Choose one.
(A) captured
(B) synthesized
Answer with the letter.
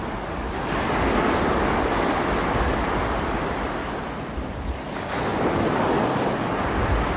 A